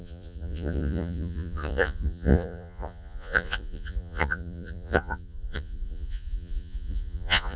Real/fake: fake